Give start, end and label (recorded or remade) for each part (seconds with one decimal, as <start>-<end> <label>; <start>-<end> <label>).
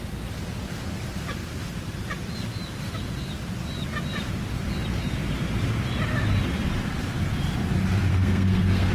0.0-8.1 recorded; 8.1-8.9 remade